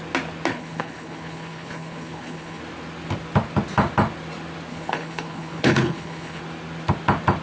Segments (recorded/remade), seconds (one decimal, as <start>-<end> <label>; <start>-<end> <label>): 0.0-0.5 recorded; 0.5-2.6 remade; 2.6-4.7 recorded; 4.7-6.4 remade; 6.4-7.4 recorded